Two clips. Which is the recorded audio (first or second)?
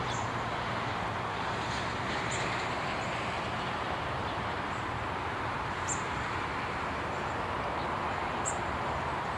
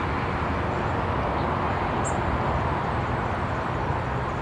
second